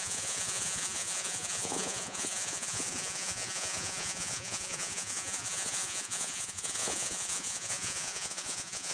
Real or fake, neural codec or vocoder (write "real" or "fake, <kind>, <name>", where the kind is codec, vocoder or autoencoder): fake, vocoder, Vocos